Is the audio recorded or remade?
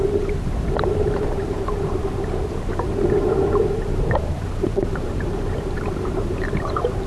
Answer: remade